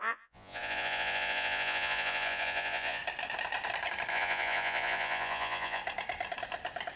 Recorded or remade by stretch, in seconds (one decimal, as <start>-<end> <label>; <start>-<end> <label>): 0.0-3.0 remade; 3.0-4.1 recorded; 4.1-5.8 remade; 5.8-7.0 recorded